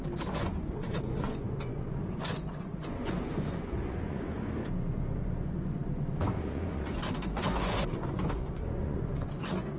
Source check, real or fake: fake